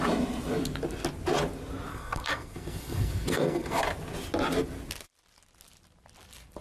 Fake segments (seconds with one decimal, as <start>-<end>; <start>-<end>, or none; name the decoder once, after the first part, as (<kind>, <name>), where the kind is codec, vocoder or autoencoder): 1.9-3.8 (codec, SNAC)

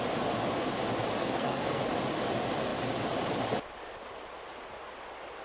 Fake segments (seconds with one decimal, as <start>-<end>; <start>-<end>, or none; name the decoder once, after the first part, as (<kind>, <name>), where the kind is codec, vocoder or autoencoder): 1.2-1.8 (codec, SNAC)

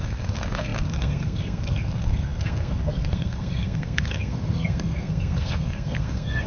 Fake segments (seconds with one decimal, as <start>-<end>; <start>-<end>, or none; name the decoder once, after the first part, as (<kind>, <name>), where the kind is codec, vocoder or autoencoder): 0.0-6.5 (codec, SNAC)

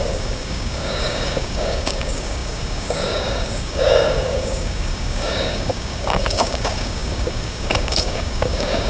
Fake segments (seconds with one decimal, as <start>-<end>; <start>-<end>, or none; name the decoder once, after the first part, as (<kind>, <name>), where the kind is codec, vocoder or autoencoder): 0.0-8.9 (codec, DAC)

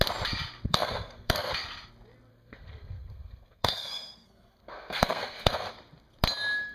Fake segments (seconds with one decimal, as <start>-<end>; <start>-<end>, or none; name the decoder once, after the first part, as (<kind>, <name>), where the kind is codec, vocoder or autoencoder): 0.7-1.5 (codec, SNAC); 2.3-5.7